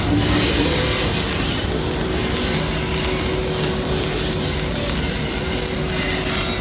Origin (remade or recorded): recorded